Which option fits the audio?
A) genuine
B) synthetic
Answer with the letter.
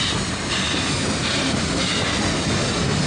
A